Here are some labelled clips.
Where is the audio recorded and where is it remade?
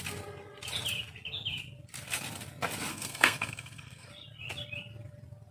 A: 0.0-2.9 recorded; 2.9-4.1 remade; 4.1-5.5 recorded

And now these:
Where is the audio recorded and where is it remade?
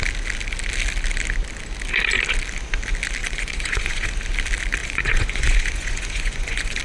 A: 0.0-3.2 recorded; 3.2-4.1 remade; 4.1-4.8 recorded; 4.8-6.8 remade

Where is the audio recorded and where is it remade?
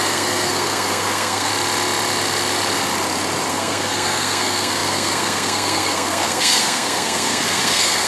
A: 0.0-1.5 remade; 1.5-3.5 recorded; 3.5-8.1 remade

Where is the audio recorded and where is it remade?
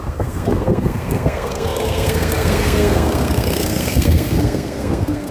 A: 0.0-5.3 remade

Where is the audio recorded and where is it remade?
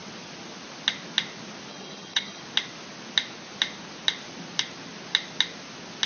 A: 0.0-1.7 recorded; 1.7-2.4 remade; 2.4-6.1 recorded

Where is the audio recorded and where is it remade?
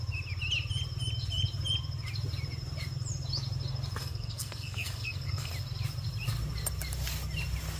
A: 0.0-4.0 recorded; 4.0-5.5 remade; 5.5-7.8 recorded